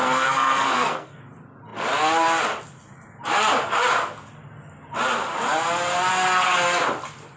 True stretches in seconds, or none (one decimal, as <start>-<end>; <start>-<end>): 1.2-7.4